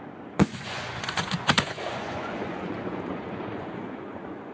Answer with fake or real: fake